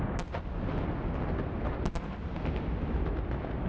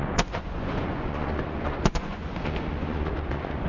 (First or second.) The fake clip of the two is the second